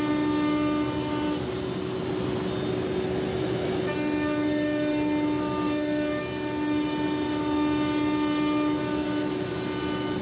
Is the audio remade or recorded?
recorded